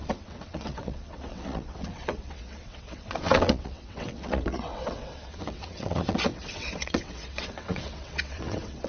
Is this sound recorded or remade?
remade